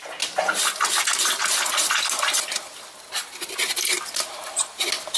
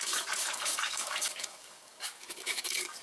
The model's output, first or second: second